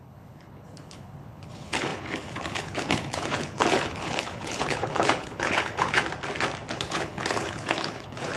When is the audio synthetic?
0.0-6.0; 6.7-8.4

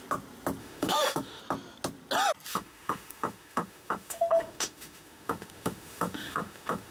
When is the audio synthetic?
0.6-1.4; 2.5-6.9

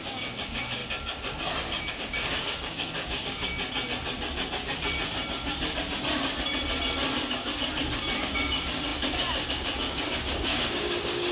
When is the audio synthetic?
0.0-0.8; 1.9-3.5; 8.2-11.3

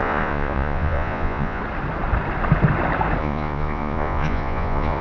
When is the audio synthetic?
0.0-1.6; 3.2-5.0

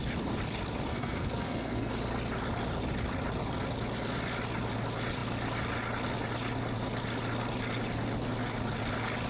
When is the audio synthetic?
0.9-1.9

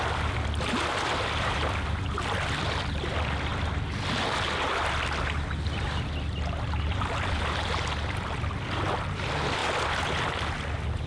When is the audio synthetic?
none